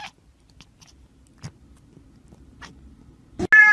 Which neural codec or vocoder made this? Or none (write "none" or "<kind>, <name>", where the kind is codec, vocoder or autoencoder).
none